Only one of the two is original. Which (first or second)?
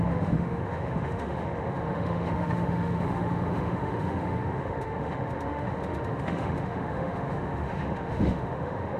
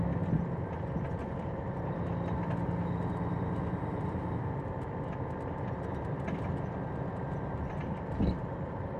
second